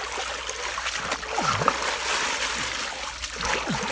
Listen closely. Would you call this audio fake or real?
real